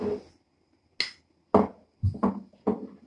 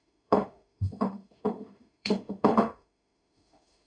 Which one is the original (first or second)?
first